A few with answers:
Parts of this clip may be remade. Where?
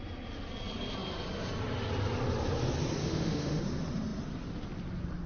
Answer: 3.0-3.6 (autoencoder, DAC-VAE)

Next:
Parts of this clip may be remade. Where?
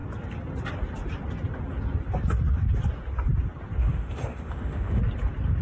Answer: 3.8-5.0 (autoencoder, DAC-VAE)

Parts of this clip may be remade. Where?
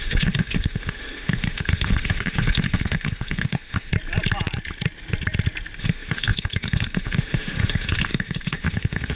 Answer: 0.0-3.9 (autoencoder, DAC-VAE); 5.8-9.2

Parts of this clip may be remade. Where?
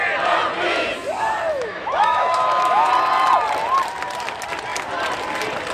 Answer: 1.5-2.9 (autoencoder, DAC-VAE)